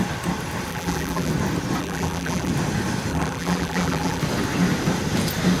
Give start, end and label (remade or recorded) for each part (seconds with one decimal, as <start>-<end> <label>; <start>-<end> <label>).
0.0-0.7 recorded; 0.7-1.3 remade; 1.3-1.8 recorded; 1.8-2.5 remade; 2.5-3.1 recorded; 3.1-4.2 remade; 4.2-5.6 recorded